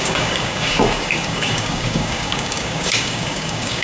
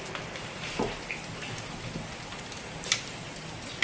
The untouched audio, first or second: second